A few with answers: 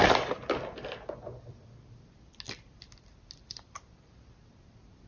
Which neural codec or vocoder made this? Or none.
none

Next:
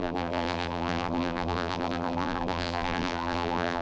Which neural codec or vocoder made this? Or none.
vocoder, BigVGAN v2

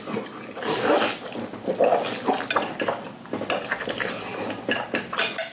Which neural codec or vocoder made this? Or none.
none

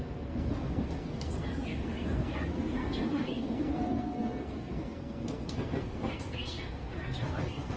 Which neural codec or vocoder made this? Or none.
codec, SNAC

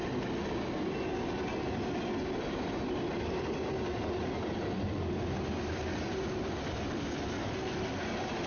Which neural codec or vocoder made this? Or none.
none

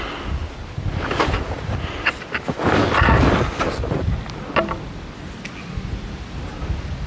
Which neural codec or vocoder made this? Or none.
none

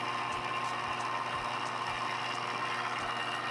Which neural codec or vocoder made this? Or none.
none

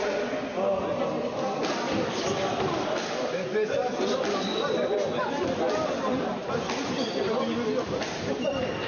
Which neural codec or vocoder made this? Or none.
none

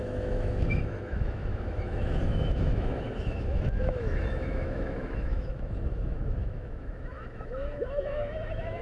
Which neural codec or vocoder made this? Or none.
autoencoder, DAC-VAE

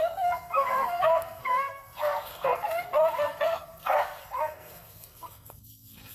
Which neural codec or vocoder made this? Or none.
codec, SNAC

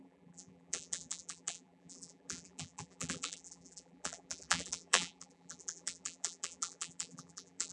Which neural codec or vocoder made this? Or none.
vocoder, BigVGAN v2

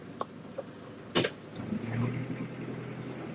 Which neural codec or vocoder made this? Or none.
none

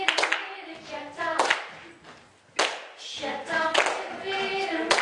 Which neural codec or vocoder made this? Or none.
none